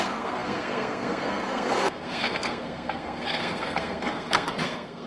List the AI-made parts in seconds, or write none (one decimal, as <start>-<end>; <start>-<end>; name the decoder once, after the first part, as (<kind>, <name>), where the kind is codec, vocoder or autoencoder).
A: 0.0-5.1 (codec, SNAC)